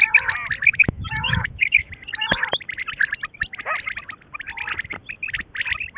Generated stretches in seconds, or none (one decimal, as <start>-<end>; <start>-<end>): 0.7-1.9